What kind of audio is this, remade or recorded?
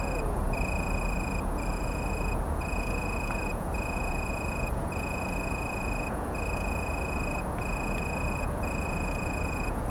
remade